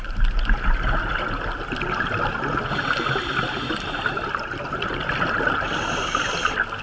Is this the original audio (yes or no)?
yes